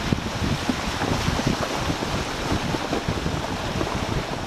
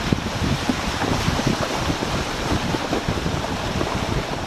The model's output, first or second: second